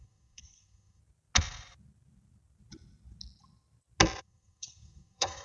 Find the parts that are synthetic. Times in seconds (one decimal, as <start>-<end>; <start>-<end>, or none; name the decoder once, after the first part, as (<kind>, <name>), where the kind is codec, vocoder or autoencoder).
0.0-1.0 (codec, SNAC); 4.2-5.4

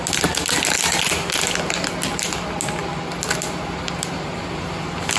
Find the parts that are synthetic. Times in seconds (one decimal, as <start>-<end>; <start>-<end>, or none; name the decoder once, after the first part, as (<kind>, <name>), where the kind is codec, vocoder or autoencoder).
none

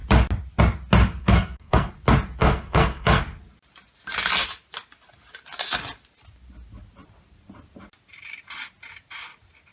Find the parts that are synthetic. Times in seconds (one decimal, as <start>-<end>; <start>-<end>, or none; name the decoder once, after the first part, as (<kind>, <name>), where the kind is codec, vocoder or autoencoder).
1.2-1.9 (codec, SNAC); 2.4-3.2

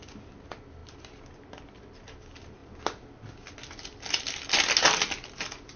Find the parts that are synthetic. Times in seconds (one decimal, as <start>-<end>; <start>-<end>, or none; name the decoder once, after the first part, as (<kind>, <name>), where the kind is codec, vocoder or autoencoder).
none